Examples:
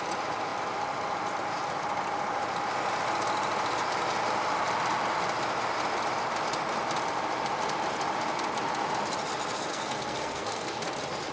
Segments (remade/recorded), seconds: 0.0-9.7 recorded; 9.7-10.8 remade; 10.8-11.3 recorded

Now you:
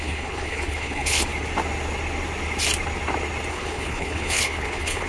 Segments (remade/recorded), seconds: 0.0-1.3 remade; 1.3-3.5 recorded; 3.5-5.1 remade